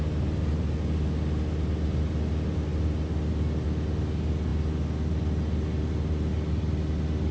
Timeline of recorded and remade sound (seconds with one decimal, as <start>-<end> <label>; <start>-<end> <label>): 0.0-7.3 recorded